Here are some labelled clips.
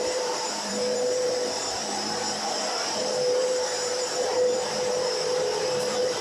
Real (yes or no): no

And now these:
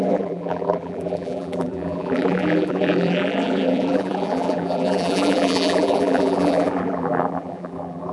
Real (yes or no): no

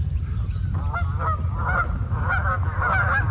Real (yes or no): yes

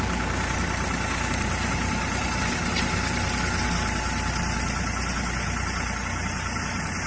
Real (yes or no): yes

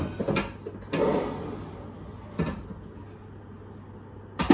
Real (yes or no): yes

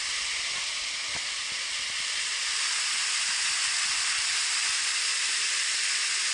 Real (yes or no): yes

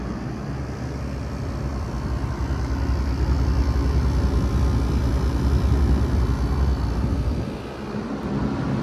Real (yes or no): yes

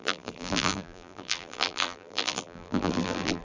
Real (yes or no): no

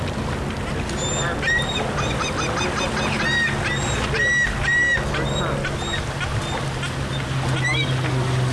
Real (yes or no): yes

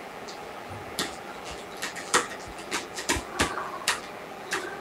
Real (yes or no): no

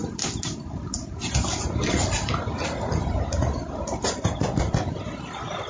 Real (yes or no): yes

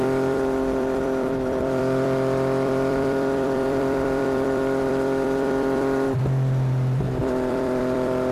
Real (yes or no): no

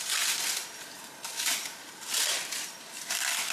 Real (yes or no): no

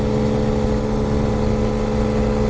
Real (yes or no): yes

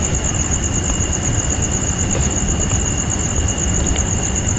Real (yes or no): yes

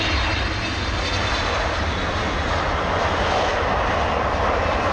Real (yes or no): yes